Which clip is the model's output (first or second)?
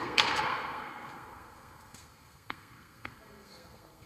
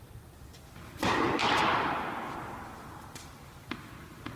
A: first